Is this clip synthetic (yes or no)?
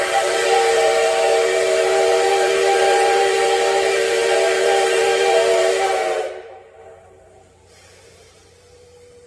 yes